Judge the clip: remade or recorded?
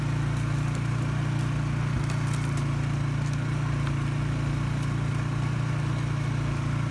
recorded